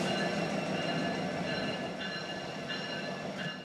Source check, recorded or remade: remade